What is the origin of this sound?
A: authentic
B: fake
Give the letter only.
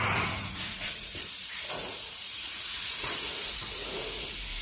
B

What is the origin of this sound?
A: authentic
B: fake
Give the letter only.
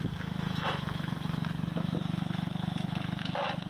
B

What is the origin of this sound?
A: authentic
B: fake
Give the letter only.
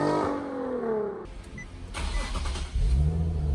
A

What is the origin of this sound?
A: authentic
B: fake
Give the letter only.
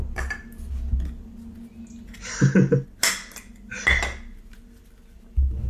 A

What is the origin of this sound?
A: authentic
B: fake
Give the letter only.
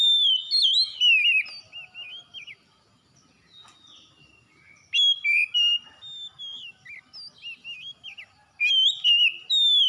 A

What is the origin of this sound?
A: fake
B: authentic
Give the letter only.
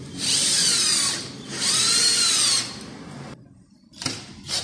A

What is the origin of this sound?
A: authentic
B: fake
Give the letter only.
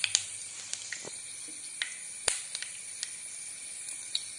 A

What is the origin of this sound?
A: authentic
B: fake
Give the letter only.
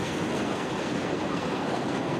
B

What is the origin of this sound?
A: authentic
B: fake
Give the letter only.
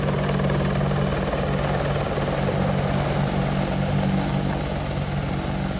A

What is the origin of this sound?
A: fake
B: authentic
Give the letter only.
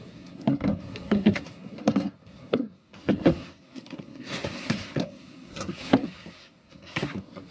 A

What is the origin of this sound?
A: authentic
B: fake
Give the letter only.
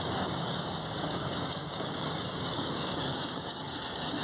B